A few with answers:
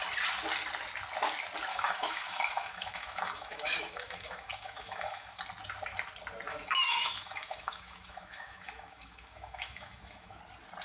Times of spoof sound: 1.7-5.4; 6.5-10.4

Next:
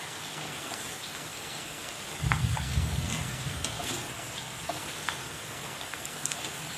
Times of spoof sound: 0.0-6.8

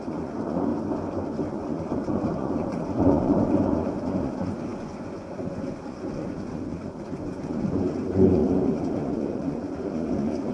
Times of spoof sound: 0.0-0.7; 1.5-10.5

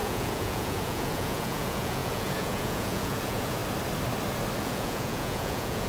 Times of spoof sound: 0.0-3.6; 4.6-5.9

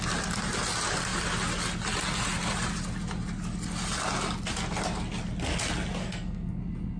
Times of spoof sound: 6.0-6.6

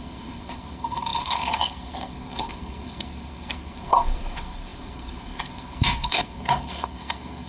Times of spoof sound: 0.0-7.5

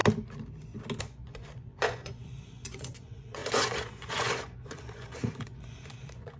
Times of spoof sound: 1.0-6.4